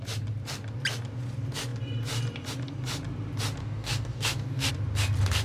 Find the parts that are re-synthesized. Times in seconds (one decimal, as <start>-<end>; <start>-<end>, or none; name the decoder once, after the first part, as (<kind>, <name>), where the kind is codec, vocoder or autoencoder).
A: 3.6-4.7 (codec, DAC)